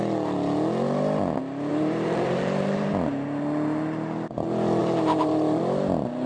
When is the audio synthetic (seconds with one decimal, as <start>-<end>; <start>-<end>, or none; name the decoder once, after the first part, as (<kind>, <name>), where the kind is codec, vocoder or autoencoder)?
1.7-2.9 (vocoder, BigVGAN v2); 4.8-5.6